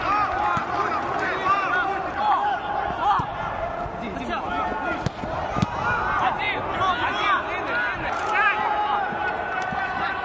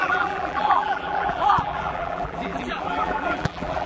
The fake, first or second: second